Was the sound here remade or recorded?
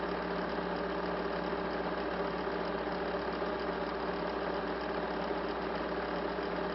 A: recorded